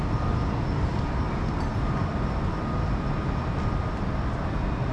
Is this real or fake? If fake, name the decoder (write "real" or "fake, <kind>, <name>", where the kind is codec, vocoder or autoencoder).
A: real